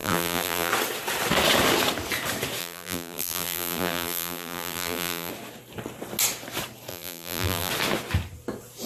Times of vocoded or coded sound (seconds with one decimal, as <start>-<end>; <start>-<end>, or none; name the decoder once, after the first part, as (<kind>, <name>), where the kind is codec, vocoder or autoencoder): 0.0-0.7 (vocoder, BigVGAN v2); 2.6-5.3; 6.9-7.7